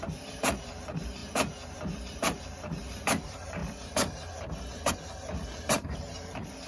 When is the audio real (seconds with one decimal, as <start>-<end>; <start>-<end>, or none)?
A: 3.6-4.9